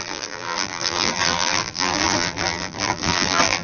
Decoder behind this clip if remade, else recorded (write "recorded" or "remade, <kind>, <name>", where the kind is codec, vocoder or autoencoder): remade, vocoder, BigVGAN v2